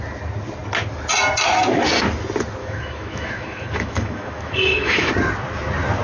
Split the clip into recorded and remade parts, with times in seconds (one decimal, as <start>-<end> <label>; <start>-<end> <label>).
0.0-2.6 recorded; 2.6-5.1 remade; 5.1-6.0 recorded